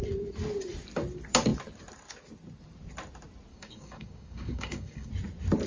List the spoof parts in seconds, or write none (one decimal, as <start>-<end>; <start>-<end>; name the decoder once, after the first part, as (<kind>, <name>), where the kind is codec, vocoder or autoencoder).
3.5-5.1 (codec, DAC)